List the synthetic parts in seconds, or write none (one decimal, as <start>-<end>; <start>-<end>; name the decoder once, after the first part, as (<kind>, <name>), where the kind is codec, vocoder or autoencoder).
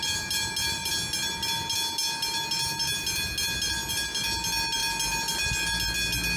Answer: none